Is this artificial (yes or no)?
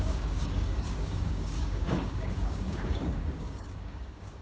yes